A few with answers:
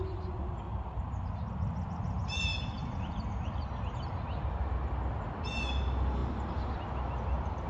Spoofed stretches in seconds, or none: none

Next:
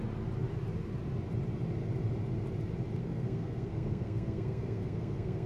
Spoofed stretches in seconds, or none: 3.0-5.5 (codec, SNAC)

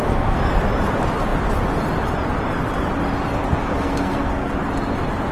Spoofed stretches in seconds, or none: 0.0-0.6 (codec, SNAC); 3.7-4.5

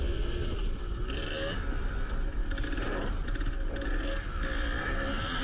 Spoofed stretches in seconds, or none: none

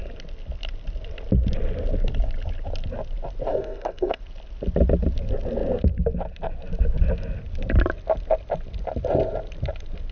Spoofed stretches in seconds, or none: 3.5-4.2 (codec, SNAC)